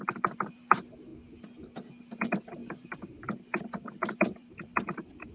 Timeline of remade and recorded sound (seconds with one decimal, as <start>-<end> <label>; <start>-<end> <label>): 0.0-1.1 remade; 1.1-2.0 recorded; 2.0-5.3 remade